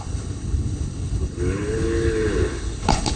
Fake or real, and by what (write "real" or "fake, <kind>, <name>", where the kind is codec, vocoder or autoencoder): fake, codec, HILCodec